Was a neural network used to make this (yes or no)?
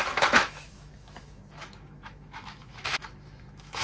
yes